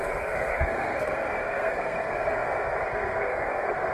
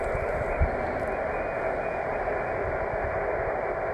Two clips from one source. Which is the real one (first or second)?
second